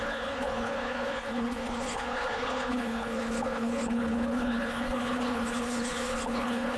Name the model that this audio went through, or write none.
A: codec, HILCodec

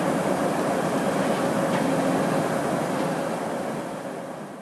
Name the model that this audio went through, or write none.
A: none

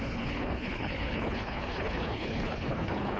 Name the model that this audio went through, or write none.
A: codec, HILCodec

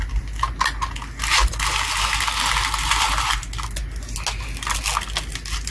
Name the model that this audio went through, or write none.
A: none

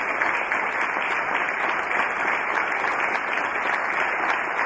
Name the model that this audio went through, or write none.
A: none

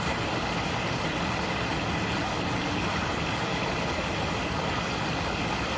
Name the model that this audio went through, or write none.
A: none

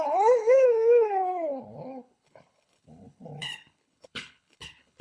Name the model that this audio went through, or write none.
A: codec, HILCodec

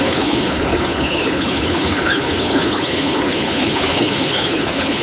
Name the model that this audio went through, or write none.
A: codec, HILCodec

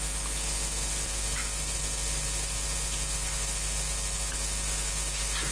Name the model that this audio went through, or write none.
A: none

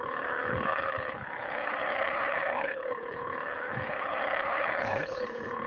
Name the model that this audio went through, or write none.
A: codec, HILCodec